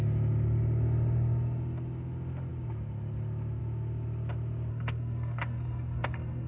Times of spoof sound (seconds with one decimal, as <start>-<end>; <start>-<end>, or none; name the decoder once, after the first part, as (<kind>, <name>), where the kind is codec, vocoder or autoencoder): 4.7-6.5 (codec, SNAC)

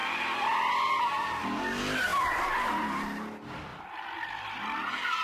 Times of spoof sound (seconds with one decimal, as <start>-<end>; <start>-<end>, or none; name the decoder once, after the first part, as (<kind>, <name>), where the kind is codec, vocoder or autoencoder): 0.0-0.7 (vocoder, BigVGAN v2); 2.1-2.7; 3.7-4.2

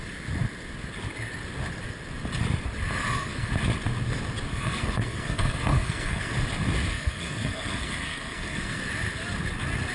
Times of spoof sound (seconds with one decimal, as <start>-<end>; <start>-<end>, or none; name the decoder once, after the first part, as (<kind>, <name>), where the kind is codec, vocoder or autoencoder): 3.0-3.5 (codec, SNAC); 4.5-6.3; 6.9-8.8